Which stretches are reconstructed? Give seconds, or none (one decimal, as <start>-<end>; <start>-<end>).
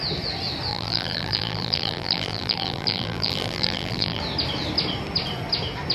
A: 0.7-4.2